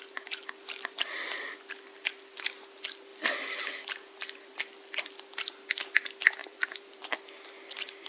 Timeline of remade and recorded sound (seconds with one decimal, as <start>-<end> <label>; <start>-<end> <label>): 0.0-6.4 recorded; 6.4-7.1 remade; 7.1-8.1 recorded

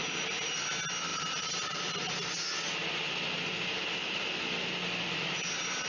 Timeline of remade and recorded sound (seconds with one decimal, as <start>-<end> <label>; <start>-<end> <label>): 0.0-1.1 recorded; 1.1-1.8 remade; 1.8-5.9 recorded

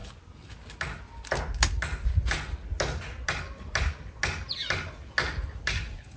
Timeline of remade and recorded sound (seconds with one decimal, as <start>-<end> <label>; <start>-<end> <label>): 0.0-6.2 recorded

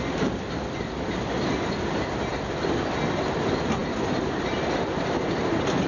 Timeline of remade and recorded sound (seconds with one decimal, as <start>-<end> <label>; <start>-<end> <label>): 0.0-5.9 recorded

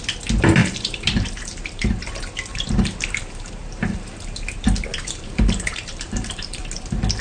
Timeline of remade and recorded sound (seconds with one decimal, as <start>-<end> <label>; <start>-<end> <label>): 0.0-0.6 recorded; 0.6-2.0 remade; 2.0-2.5 recorded; 2.5-4.1 remade; 4.1-4.9 recorded; 4.9-6.6 remade; 6.6-7.2 recorded

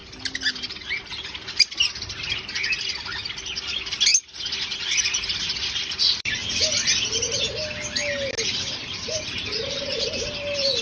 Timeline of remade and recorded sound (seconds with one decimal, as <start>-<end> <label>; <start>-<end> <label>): 0.0-0.8 recorded; 0.8-3.2 remade; 3.2-4.2 recorded; 4.2-6.4 remade; 6.4-8.7 recorded; 8.7-10.8 remade

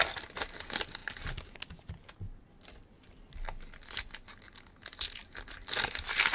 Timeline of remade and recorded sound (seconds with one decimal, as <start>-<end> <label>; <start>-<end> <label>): 0.0-6.3 recorded

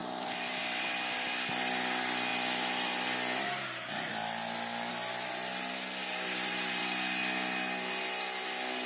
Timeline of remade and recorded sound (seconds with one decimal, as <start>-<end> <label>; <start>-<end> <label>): 0.0-0.6 remade; 0.6-6.0 recorded; 6.0-6.8 remade; 6.8-8.9 recorded